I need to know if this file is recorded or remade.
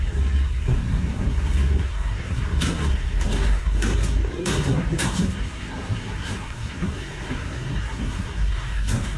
remade